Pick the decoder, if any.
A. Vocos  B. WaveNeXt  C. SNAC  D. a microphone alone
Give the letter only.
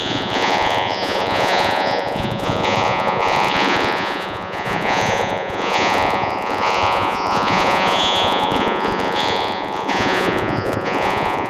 A